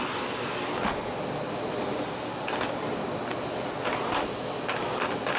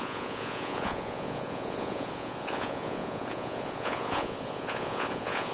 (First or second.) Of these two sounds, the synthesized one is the second